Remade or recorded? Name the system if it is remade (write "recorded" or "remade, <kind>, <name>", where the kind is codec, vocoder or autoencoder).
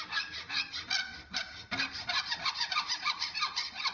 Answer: recorded